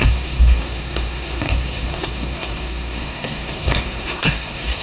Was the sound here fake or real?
fake